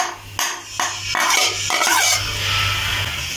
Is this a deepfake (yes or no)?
no